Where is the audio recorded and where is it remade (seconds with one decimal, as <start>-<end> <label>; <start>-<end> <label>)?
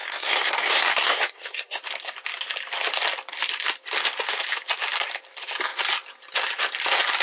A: 0.0-1.8 remade; 1.8-7.2 recorded